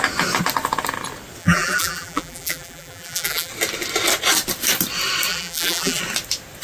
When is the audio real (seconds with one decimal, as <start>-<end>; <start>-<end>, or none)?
0.0-1.4; 3.5-5.3; 6.0-6.6